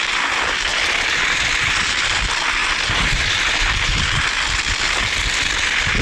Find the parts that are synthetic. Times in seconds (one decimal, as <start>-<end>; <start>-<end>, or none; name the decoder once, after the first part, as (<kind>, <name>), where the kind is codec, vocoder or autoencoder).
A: 0.7-2.2 (vocoder, BigVGAN v2); 2.6-4.3